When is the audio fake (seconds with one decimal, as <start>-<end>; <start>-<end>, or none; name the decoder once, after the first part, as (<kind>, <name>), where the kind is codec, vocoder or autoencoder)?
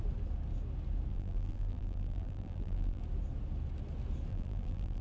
1.1-3.0 (vocoder, BigVGAN v2); 4.3-5.0